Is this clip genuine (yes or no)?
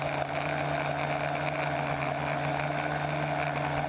yes